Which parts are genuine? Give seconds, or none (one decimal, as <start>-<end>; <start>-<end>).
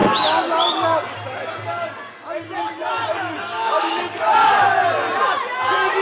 0.0-3.5; 4.0-6.0